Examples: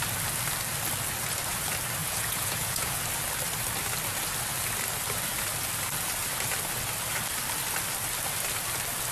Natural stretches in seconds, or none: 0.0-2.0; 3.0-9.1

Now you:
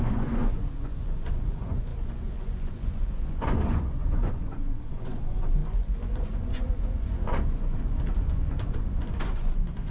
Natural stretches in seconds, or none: none

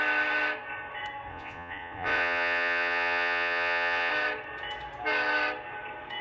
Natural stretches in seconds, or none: 0.0-1.3; 4.1-6.2

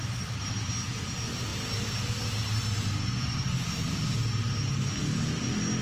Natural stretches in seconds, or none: 0.0-5.8

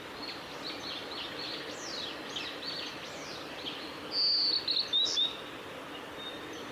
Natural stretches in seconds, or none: 0.0-6.7

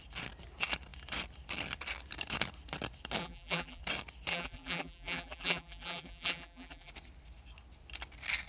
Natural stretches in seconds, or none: 0.0-3.2; 3.8-4.3; 6.9-8.5

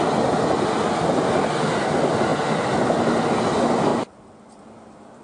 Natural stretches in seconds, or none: 0.0-5.2